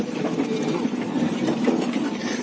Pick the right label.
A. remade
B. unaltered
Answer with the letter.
A